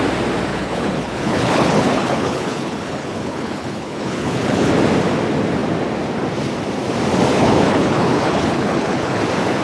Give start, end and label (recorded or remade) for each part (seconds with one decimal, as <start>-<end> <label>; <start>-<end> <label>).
0.0-0.5 recorded; 0.5-4.7 remade; 4.7-7.3 recorded; 7.3-9.2 remade; 9.2-9.6 recorded